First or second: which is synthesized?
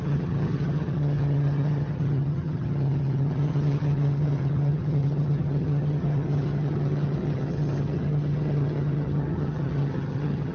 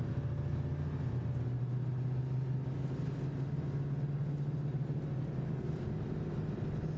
first